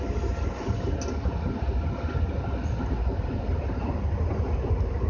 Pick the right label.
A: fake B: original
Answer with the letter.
B